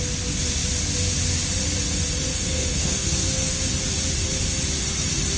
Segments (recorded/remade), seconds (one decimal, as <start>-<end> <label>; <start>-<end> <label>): 0.0-2.3 recorded; 2.3-3.5 remade; 3.5-5.4 recorded